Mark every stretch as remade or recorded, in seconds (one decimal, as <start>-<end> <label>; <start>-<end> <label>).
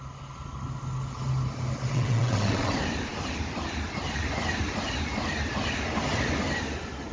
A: 0.0-1.9 recorded; 1.9-2.7 remade; 2.7-7.1 recorded